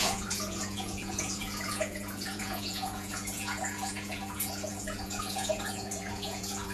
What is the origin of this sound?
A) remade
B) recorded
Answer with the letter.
A